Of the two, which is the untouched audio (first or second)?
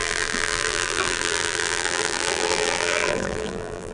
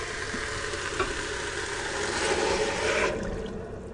second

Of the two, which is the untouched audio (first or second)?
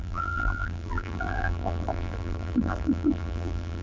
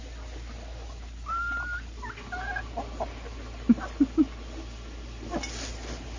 second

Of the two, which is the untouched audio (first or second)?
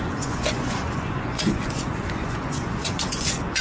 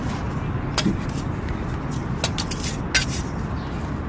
second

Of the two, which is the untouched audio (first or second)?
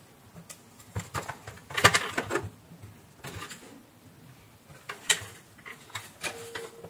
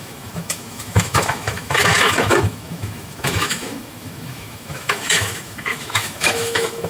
first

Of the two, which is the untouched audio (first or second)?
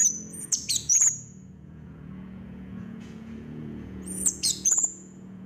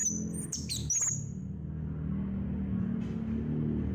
second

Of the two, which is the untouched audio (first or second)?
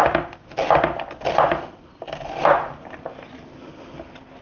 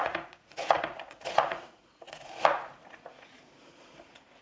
first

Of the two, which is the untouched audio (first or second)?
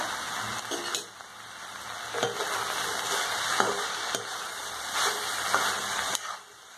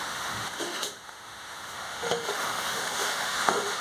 first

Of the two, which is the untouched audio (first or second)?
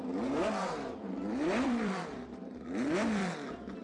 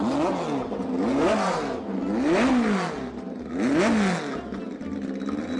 second